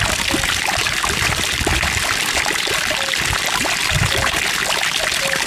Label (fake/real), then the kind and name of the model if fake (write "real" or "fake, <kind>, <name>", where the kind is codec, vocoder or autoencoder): real